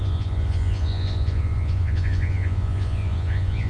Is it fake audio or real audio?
fake